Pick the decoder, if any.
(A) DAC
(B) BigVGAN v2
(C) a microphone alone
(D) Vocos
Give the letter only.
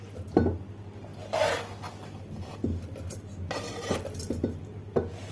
C